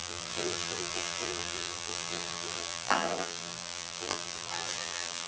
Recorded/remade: remade